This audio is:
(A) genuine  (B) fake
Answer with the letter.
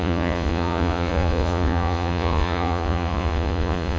B